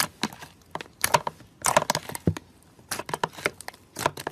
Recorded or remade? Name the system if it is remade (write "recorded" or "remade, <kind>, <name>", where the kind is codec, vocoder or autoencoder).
recorded